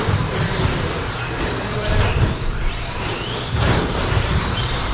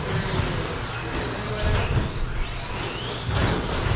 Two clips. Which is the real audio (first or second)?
second